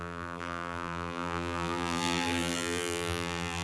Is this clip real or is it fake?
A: fake